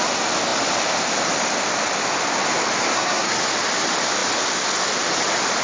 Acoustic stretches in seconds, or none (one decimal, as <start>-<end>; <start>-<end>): 0.0-2.9; 3.4-5.6